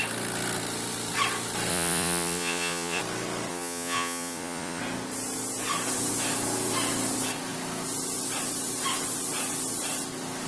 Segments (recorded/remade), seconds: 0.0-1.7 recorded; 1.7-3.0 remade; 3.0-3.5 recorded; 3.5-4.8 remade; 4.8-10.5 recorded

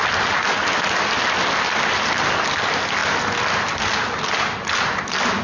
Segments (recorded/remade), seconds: 0.0-5.4 recorded

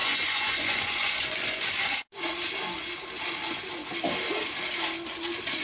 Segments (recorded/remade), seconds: 0.0-1.7 remade; 1.7-5.6 recorded

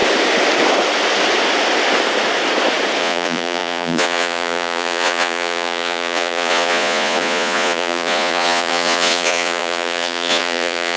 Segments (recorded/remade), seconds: 0.0-3.0 recorded; 3.0-11.0 remade

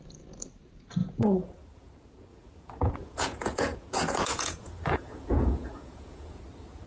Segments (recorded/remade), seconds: 0.0-1.0 recorded; 1.0-1.9 remade; 1.9-2.3 recorded; 2.3-6.4 remade; 6.4-6.9 recorded